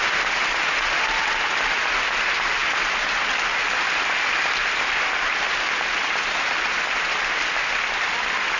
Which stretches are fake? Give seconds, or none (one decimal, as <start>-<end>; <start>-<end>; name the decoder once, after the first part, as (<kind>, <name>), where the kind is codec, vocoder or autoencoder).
none